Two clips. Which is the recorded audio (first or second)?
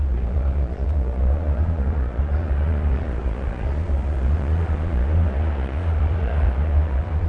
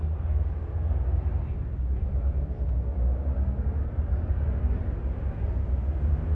second